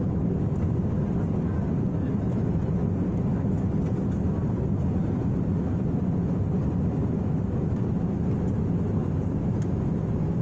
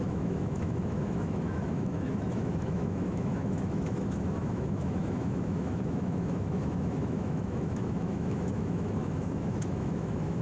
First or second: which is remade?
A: second